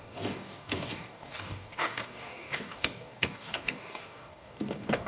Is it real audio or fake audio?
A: fake